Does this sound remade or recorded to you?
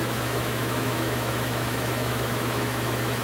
remade